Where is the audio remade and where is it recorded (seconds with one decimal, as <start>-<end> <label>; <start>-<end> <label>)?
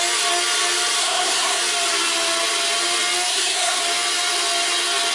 0.0-1.0 recorded; 1.0-1.6 remade; 1.6-3.3 recorded; 3.3-3.8 remade; 3.8-5.1 recorded